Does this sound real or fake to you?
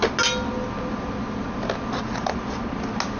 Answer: real